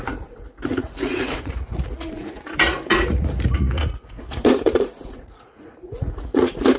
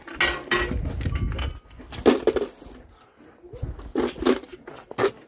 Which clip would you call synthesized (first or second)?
first